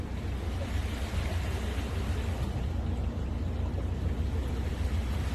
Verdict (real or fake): real